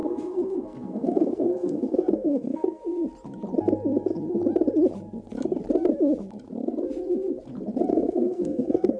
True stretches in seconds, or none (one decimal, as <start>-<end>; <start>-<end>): 2.8-7.9